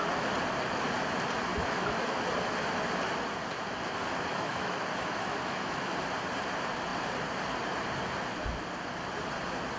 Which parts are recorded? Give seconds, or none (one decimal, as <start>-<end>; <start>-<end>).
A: 0.0-1.5; 2.2-4.3; 5.9-9.8